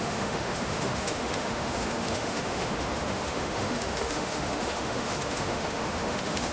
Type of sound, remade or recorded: remade